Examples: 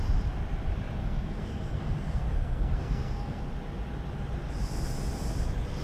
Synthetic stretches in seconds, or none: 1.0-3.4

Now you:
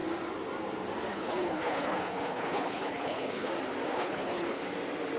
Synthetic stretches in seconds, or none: 1.1-3.5; 3.9-4.6

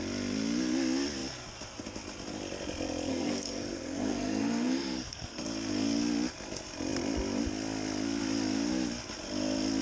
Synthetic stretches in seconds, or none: 3.1-5.4

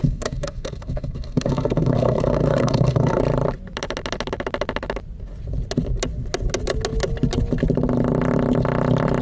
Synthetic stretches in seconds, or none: 0.0-3.2

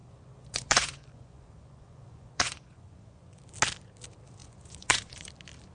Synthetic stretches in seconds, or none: 0.0-3.4; 4.4-5.3

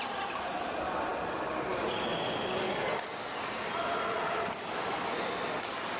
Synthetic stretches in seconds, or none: none

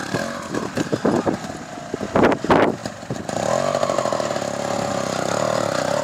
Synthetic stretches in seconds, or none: none